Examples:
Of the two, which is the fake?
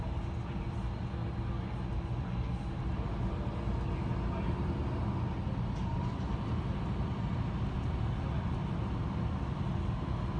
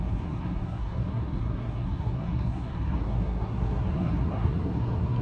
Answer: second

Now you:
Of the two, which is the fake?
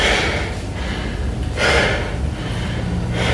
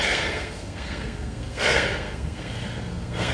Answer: second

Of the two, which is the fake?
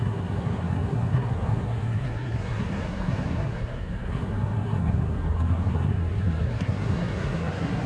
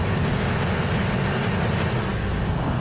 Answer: first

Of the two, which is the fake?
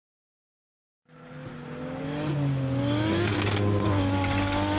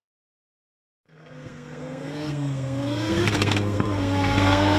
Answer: second